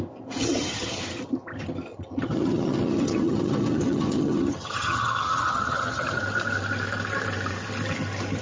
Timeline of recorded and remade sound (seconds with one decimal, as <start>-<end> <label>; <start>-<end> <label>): 0.0-0.4 recorded; 0.4-1.0 remade; 1.0-1.9 recorded; 1.9-6.2 remade; 6.2-8.4 recorded